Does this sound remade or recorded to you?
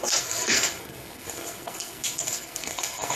remade